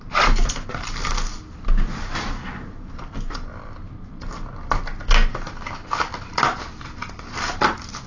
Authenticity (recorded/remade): recorded